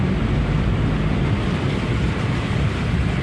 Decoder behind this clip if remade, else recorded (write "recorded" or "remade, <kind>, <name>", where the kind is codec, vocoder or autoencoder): recorded